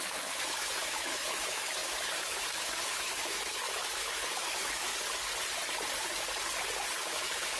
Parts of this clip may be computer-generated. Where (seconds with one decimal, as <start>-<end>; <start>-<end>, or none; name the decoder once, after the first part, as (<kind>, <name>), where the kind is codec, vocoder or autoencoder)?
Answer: 0.0-4.9 (autoencoder, DAC-VAE); 7.0-7.6